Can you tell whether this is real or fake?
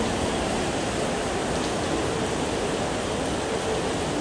real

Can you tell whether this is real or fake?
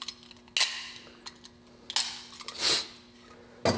real